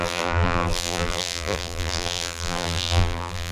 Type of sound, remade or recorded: remade